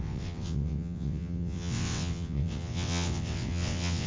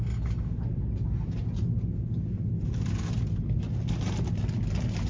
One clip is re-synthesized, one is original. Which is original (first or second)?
second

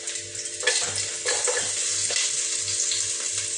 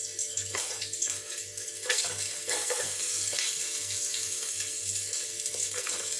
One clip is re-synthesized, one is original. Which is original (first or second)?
first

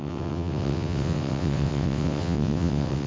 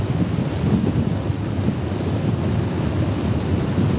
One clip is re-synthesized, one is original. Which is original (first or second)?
second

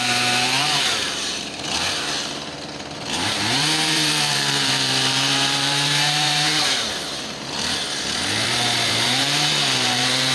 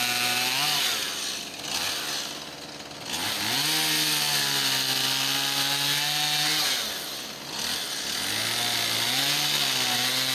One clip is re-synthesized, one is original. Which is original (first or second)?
second